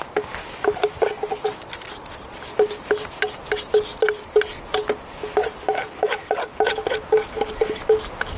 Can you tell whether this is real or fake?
real